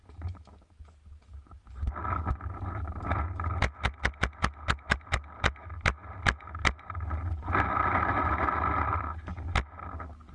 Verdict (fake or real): real